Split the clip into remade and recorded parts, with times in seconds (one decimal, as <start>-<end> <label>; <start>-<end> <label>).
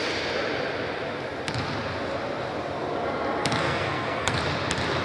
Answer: 0.0-3.4 recorded; 3.4-4.4 remade; 4.4-5.0 recorded